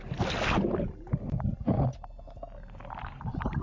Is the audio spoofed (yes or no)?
no